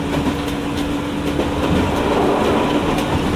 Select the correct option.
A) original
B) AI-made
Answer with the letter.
A